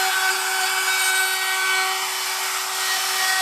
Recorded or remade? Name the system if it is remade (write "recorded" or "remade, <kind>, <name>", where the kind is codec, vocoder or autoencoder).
recorded